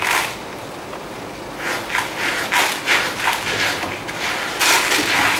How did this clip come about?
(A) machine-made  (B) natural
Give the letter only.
B